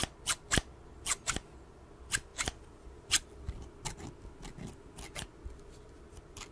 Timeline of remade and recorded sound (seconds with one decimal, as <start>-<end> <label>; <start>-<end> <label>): 0.0-6.5 recorded